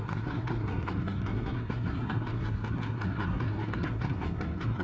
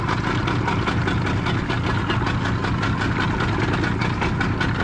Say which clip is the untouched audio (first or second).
second